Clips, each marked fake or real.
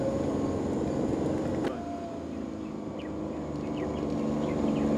real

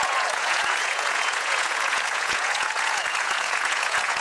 fake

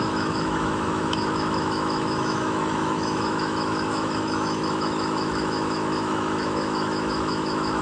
fake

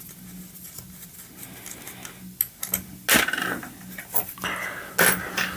real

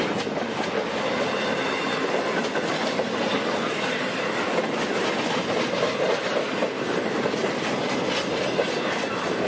real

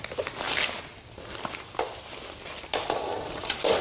real